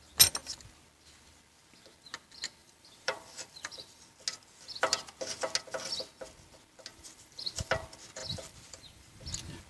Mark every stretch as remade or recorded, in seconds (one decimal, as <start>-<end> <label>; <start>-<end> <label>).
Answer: 0.0-2.6 recorded; 2.6-4.0 remade; 4.0-6.9 recorded; 6.9-7.7 remade; 7.7-8.2 recorded; 8.2-9.2 remade; 9.2-9.7 recorded